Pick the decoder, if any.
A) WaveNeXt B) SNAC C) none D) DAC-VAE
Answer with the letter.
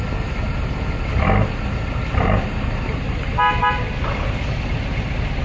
C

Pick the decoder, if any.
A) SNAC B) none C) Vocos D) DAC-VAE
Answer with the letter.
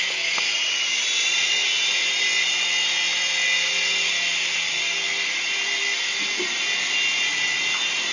B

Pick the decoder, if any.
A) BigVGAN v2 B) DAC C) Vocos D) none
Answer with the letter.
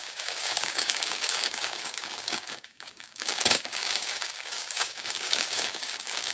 B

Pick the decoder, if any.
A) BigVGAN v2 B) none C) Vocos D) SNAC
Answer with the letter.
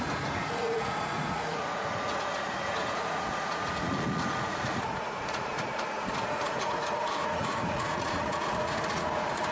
C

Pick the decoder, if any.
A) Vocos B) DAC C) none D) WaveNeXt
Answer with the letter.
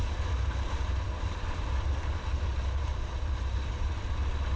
C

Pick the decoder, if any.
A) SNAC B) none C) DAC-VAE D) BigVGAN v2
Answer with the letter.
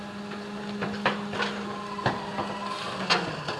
B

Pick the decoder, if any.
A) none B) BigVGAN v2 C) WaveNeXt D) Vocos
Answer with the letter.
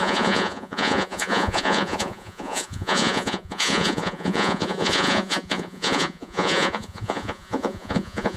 D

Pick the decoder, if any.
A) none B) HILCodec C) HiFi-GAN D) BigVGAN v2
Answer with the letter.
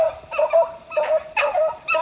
A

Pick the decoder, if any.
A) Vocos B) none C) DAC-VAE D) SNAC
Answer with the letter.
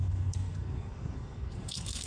D